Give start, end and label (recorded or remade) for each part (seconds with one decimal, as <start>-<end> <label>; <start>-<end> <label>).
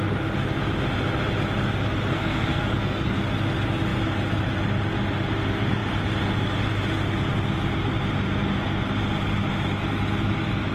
0.0-2.1 recorded; 2.1-3.1 remade; 3.1-10.7 recorded